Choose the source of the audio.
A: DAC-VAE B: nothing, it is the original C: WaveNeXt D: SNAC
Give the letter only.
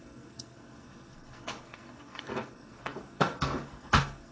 D